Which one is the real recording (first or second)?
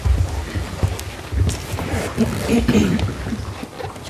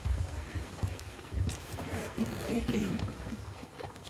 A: first